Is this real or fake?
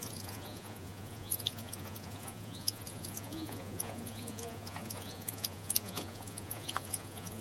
fake